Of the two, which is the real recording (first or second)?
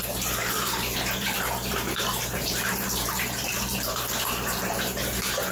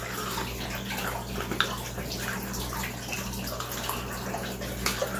second